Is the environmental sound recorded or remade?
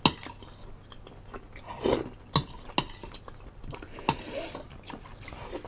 recorded